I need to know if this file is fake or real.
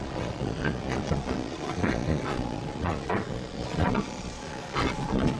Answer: fake